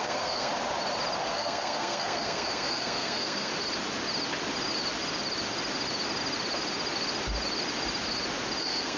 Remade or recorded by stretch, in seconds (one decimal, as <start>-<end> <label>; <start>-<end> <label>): 0.0-0.5 remade; 0.5-1.2 recorded; 1.2-3.5 remade; 3.5-8.6 recorded; 8.6-9.0 remade